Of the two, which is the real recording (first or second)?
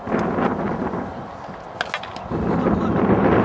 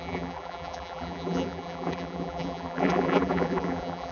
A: first